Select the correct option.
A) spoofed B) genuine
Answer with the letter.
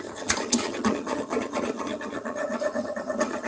A